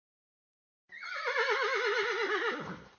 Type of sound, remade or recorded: recorded